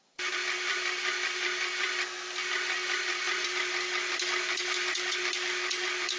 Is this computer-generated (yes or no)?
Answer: no